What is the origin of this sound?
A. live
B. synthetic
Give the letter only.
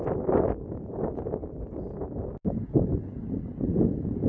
A